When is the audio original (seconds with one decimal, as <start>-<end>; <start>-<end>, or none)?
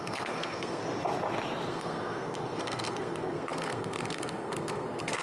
0.8-1.7